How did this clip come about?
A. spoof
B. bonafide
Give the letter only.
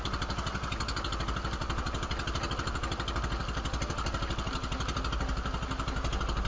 B